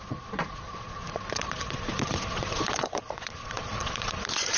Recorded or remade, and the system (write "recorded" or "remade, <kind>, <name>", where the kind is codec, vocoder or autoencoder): remade, vocoder, Vocos